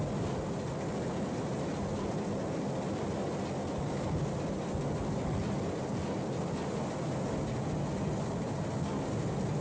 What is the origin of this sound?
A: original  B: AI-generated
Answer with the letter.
A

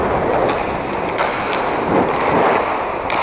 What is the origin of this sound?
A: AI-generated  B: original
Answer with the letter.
B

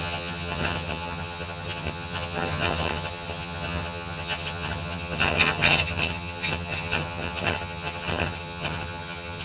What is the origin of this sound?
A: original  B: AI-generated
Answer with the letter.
B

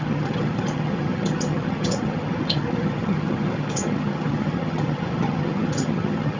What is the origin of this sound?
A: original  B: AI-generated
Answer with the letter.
B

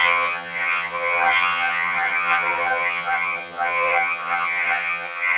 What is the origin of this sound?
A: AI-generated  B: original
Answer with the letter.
A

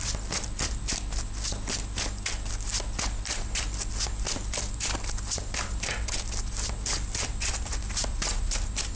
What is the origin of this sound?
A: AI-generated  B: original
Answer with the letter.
B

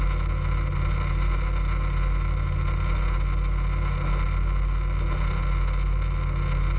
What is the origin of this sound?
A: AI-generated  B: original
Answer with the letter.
B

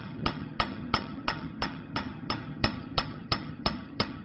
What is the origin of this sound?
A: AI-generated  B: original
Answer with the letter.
A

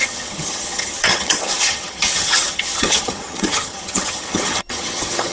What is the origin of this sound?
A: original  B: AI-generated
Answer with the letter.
B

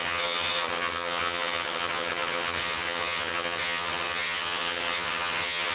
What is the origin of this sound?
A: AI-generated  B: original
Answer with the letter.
A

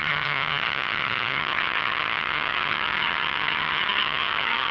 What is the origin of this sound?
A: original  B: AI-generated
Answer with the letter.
B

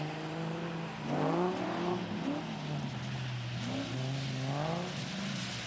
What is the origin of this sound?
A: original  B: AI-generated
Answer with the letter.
A